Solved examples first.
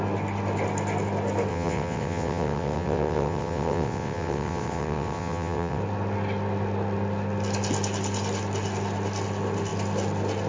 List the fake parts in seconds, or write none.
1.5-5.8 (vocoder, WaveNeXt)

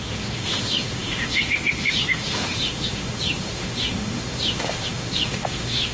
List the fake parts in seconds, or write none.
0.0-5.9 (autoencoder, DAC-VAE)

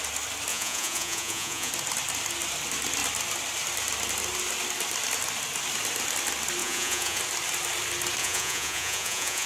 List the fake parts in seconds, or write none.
0.5-1.7 (vocoder, Vocos); 6.6-7.2; 8.2-9.5

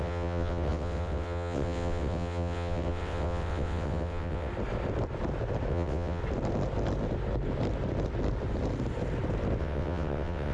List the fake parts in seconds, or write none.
0.0-4.5 (vocoder, WaveNeXt); 5.7-6.2; 9.6-10.5

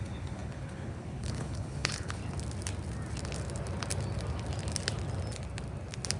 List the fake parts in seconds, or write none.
0.0-2.2 (codec, HILCodec)